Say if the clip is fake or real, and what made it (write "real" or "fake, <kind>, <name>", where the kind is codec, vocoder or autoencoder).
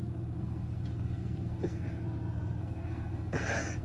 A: fake, codec, SNAC